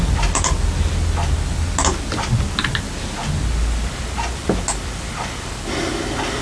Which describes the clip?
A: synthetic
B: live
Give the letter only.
B